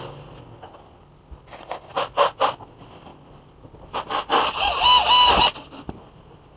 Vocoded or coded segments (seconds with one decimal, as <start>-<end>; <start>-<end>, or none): none